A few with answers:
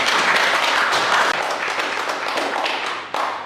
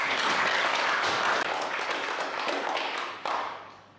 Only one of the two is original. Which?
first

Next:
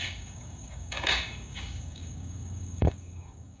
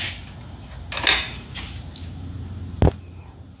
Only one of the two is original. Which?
second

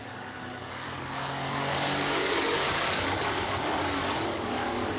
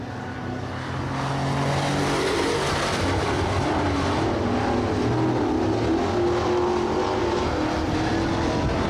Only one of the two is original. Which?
second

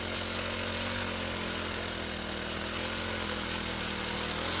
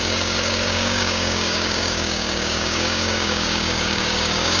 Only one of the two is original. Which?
first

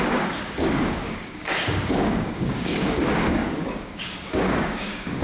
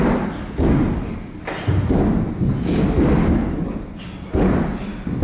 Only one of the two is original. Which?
second